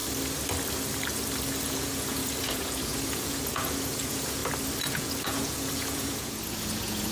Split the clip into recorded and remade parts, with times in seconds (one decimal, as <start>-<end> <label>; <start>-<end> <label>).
0.0-1.5 recorded; 1.5-4.4 remade; 4.4-4.9 recorded; 4.9-7.1 remade